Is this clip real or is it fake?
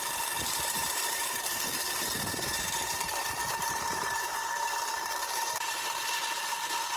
fake